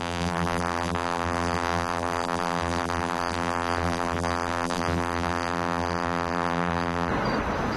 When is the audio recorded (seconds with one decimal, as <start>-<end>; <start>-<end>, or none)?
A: 7.1-7.8